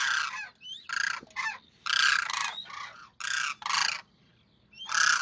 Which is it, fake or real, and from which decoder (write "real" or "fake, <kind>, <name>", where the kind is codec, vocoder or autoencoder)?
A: real